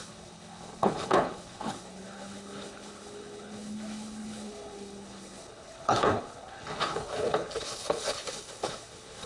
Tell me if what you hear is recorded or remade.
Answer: remade